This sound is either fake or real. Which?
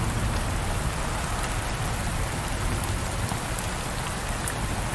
real